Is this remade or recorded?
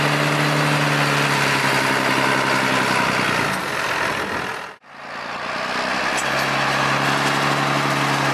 recorded